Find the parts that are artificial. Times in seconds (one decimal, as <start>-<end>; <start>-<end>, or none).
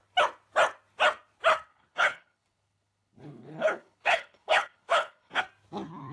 1.7-5.4